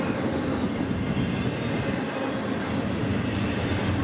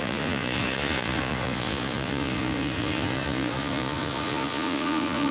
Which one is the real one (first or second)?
first